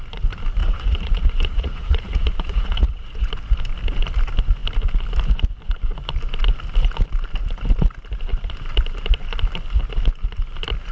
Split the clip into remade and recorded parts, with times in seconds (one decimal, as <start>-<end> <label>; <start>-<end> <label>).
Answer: 0.0-0.6 recorded; 0.6-3.3 remade; 3.3-10.9 recorded